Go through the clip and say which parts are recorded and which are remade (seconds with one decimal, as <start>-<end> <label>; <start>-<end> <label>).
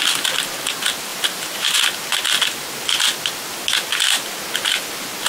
0.0-1.1 recorded; 1.1-1.7 remade; 1.7-5.3 recorded